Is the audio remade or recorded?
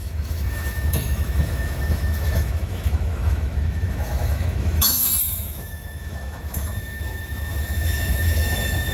remade